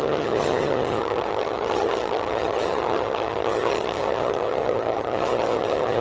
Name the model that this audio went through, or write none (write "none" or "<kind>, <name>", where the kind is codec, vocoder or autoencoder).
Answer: vocoder, HiFi-GAN